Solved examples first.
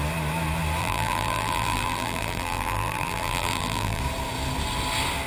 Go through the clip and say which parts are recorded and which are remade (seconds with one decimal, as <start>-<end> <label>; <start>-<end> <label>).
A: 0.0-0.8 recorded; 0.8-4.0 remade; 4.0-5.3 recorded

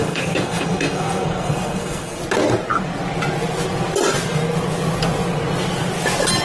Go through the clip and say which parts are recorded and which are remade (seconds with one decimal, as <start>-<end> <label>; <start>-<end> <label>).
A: 0.0-2.2 remade; 2.2-6.4 recorded

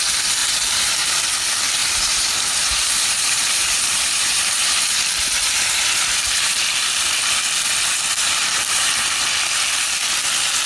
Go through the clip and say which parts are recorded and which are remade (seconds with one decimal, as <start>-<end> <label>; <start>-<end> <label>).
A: 0.0-0.4 recorded; 0.4-1.2 remade; 1.2-1.8 recorded; 1.8-6.5 remade; 6.5-8.1 recorded; 8.1-8.9 remade; 8.9-10.7 recorded